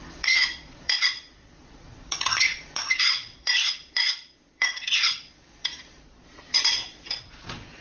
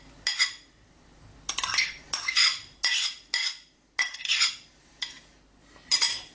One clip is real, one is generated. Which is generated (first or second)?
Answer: first